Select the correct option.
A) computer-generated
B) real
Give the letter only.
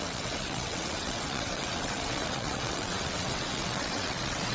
A